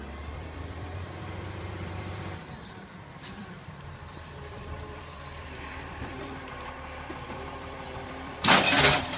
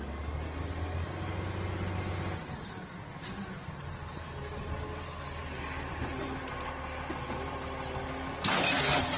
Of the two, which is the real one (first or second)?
second